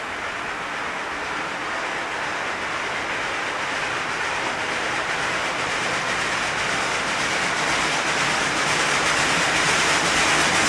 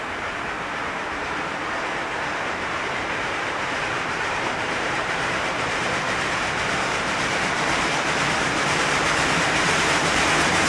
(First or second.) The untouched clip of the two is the first